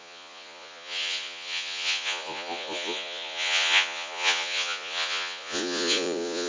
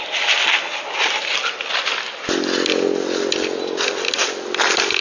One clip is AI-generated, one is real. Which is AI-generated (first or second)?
first